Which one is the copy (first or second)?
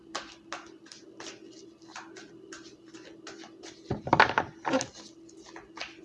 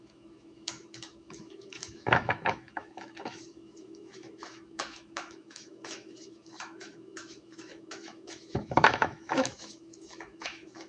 second